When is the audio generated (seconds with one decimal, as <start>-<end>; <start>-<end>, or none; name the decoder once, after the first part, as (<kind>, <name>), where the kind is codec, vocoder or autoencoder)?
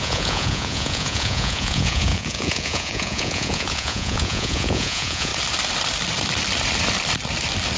0.0-5.3 (vocoder, Vocos)